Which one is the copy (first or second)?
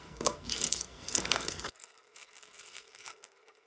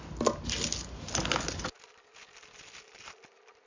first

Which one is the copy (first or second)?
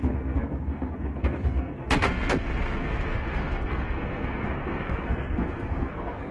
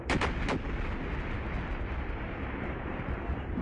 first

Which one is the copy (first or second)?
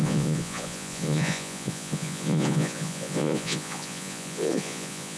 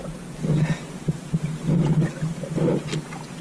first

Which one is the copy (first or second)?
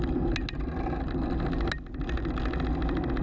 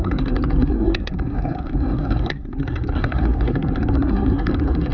second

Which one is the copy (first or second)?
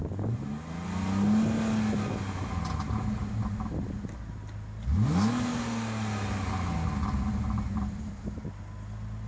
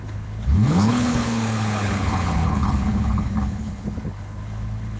second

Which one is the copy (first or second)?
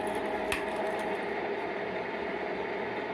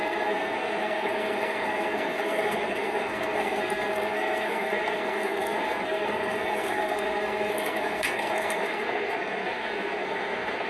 second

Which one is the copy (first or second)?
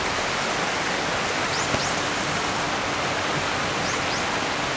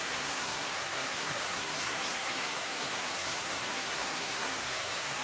second